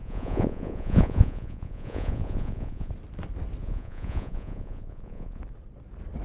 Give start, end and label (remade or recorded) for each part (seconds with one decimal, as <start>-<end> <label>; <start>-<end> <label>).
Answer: 0.0-2.9 remade; 2.9-3.6 recorded; 3.6-5.4 remade; 5.4-6.2 recorded